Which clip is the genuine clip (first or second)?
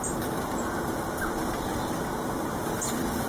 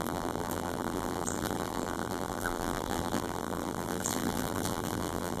first